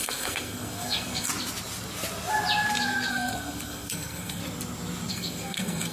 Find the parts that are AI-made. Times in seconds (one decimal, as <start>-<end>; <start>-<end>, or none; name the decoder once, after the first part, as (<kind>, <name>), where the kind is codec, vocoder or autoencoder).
0.0-1.3 (codec, SNAC); 3.1-4.4; 5.1-5.9